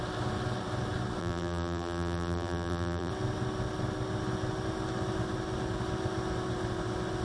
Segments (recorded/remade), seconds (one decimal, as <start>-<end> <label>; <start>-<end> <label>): 0.0-1.2 recorded; 1.2-3.1 remade; 3.1-7.2 recorded